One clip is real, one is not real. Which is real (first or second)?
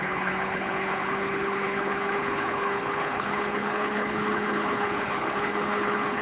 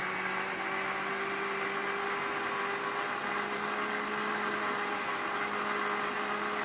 second